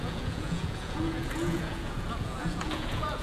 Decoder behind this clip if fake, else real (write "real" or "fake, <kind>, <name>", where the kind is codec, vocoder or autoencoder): fake, vocoder, Vocos